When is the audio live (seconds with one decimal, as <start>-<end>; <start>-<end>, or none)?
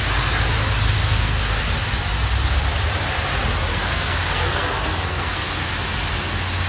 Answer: 0.0-1.0; 1.6-3.7; 5.7-6.7